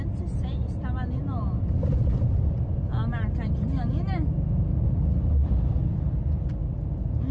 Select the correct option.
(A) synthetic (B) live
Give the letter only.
B